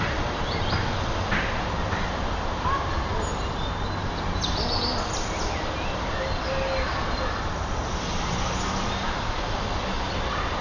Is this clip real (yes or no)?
yes